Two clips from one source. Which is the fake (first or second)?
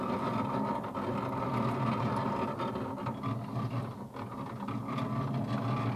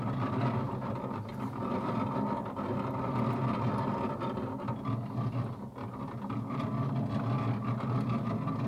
second